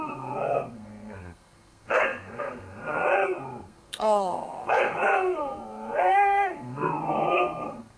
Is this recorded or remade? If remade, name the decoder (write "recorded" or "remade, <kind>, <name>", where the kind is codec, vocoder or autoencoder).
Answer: remade, codec, SNAC